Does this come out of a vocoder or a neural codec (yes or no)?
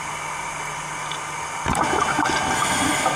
no